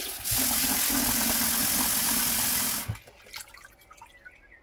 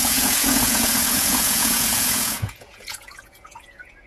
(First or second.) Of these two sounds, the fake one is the second